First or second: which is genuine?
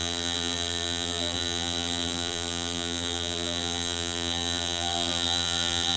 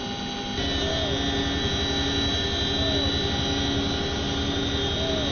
second